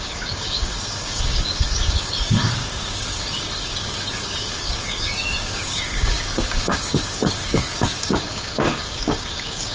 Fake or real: fake